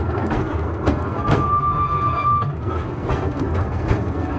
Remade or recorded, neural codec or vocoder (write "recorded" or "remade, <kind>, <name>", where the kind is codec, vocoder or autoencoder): remade, codec, SNAC